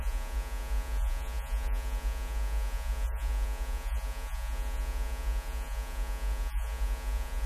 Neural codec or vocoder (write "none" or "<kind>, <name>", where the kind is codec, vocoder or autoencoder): vocoder, Vocos